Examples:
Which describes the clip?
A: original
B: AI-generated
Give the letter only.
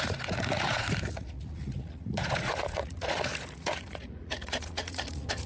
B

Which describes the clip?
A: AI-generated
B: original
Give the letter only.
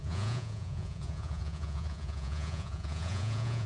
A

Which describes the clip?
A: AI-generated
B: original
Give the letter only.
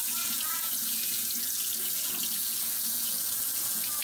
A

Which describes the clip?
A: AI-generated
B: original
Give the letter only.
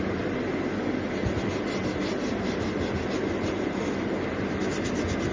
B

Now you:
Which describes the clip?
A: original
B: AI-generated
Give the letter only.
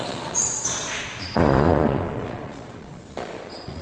B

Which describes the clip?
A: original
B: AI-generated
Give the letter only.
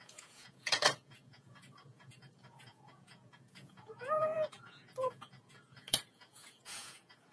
B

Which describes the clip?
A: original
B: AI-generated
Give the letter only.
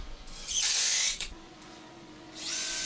B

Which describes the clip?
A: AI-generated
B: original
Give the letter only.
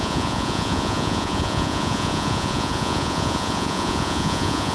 A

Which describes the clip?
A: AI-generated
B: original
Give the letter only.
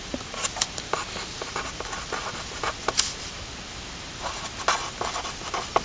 B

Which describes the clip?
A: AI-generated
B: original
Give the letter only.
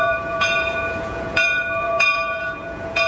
A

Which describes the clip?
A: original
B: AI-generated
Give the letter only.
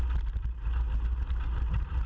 A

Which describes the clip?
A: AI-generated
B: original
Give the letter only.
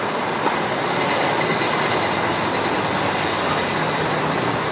B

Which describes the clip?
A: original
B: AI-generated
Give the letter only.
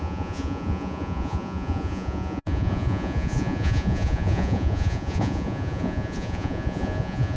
B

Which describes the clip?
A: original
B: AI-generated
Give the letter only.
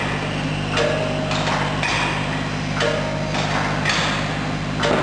A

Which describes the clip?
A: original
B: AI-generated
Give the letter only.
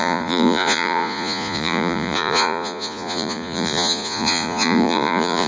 B